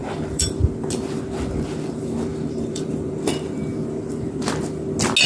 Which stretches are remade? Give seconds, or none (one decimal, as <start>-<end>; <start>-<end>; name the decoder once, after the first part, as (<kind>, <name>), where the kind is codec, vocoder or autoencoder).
0.0-0.6 (vocoder, BigVGAN v2); 2.3-3.6